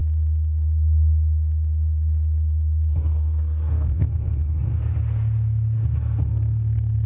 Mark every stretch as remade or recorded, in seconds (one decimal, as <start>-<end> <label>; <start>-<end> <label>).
0.0-4.9 remade; 4.9-6.3 recorded; 6.3-7.1 remade